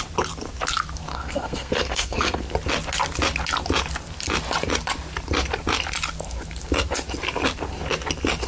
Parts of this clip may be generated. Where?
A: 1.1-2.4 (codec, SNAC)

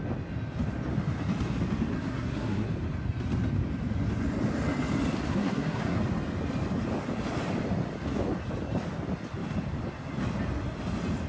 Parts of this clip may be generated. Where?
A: 1.9-2.7 (codec, SNAC); 5.3-6.0

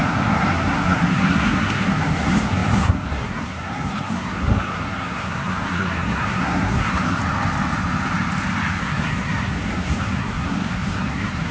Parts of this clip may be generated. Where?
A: 0.0-7.2 (codec, SNAC); 8.8-11.5